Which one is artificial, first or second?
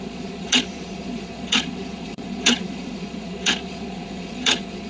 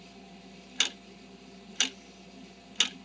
first